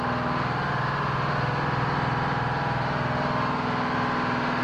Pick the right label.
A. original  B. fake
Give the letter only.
A